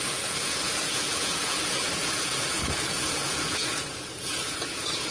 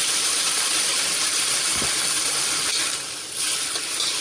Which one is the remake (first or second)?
first